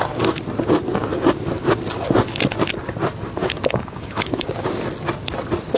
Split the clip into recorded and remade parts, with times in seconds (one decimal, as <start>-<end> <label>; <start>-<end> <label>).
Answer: 0.0-3.4 recorded; 3.4-4.8 remade; 4.8-5.8 recorded